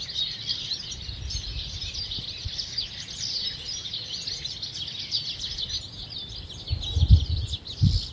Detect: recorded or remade recorded